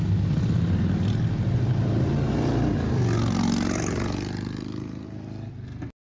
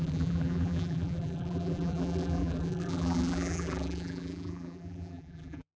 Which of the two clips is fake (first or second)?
second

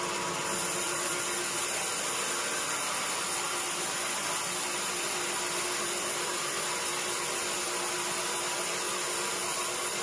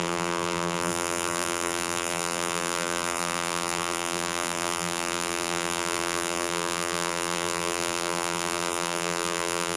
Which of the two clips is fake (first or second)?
second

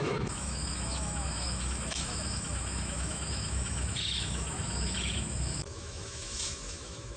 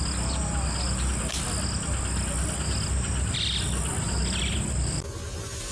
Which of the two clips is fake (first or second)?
first